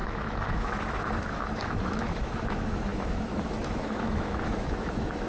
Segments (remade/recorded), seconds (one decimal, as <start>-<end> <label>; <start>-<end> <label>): 0.0-5.3 remade